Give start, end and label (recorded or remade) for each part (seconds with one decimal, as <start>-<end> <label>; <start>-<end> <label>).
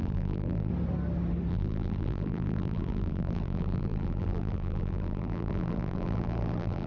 0.0-0.7 remade; 0.7-1.5 recorded; 1.5-6.9 remade